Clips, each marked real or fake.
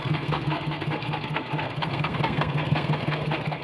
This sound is fake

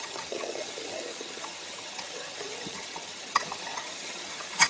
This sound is fake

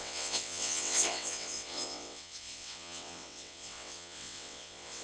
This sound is fake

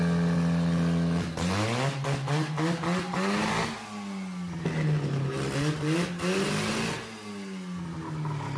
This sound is real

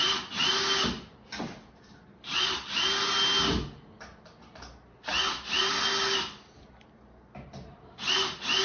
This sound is real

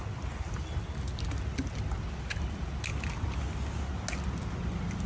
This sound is real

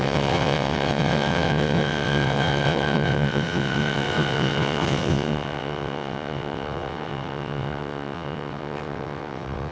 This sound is fake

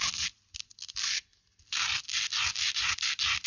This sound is real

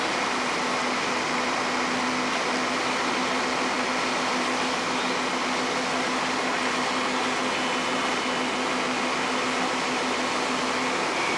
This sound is real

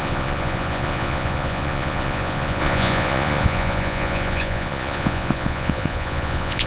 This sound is fake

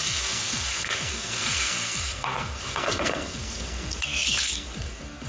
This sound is fake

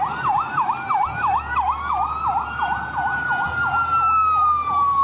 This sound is real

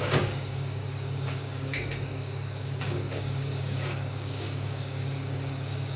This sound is fake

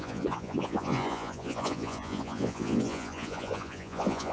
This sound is fake